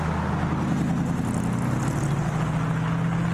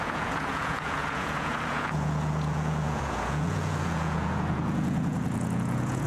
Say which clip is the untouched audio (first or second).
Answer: first